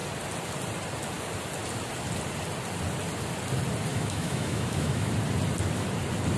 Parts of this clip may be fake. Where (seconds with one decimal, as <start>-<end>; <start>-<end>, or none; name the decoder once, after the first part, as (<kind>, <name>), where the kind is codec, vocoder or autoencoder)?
3.9-5.1 (autoencoder, DAC-VAE)